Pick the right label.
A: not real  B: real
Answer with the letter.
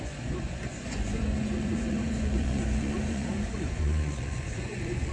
A